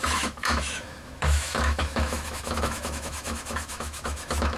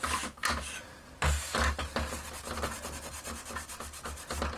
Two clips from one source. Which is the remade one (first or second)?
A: first